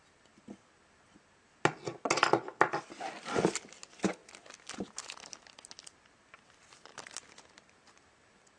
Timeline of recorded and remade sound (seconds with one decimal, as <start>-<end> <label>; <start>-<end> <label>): 0.0-8.6 recorded